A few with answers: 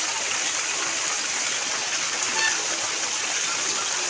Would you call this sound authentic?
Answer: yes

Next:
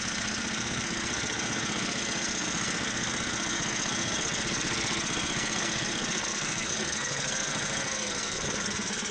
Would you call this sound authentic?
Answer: no